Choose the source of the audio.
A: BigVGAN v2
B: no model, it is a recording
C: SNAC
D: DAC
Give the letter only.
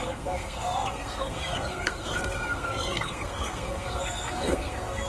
C